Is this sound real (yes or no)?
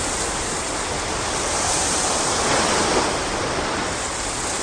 yes